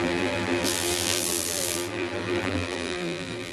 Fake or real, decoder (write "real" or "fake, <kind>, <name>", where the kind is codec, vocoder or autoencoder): fake, vocoder, BigVGAN v2